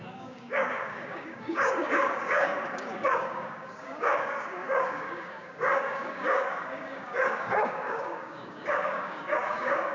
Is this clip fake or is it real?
fake